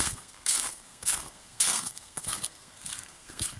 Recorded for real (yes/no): no